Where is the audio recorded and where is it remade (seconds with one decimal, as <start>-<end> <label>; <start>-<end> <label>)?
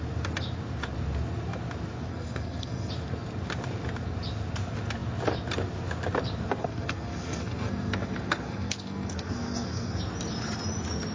0.0-2.1 recorded; 2.1-2.9 remade; 2.9-6.6 recorded; 6.6-10.0 remade; 10.0-11.1 recorded